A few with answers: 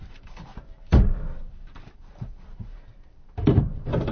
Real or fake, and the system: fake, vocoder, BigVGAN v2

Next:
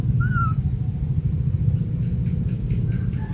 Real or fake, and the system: real